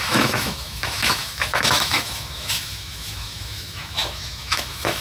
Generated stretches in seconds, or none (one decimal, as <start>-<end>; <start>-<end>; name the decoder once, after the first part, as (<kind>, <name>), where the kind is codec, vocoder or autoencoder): 0.0-5.0 (autoencoder, DAC-VAE)